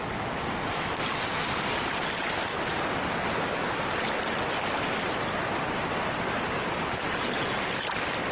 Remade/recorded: recorded